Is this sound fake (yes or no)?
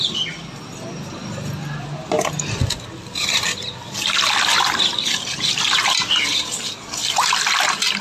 no